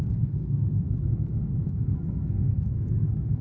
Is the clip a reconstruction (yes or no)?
yes